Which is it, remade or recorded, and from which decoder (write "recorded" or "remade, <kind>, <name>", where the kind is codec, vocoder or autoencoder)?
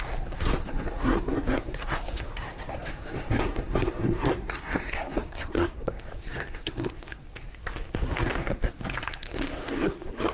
remade, codec, SNAC